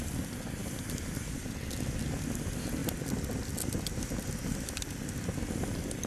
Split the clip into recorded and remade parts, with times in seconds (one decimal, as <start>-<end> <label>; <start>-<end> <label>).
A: 0.0-6.1 recorded